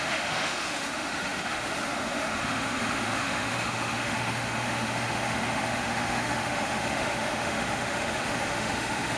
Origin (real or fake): fake